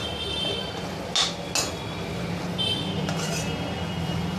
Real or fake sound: real